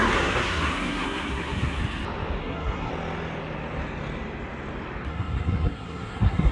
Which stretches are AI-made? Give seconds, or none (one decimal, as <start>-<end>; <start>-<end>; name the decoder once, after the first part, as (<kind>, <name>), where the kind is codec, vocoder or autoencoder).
0.0-1.8 (codec, SNAC); 2.4-2.9; 5.1-6.5